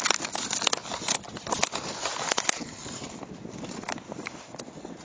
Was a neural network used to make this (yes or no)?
no